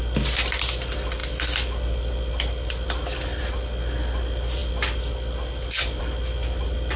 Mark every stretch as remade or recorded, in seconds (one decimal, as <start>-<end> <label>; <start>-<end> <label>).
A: 0.0-7.0 recorded